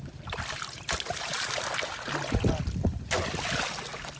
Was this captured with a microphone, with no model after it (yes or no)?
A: yes